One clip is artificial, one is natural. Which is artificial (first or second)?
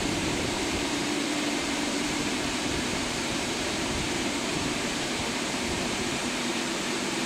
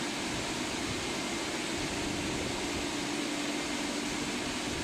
first